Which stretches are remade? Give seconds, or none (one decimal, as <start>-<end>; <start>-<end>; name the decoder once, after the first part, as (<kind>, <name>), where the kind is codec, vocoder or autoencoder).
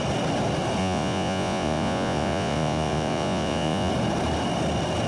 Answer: 0.8-3.9 (vocoder, Vocos)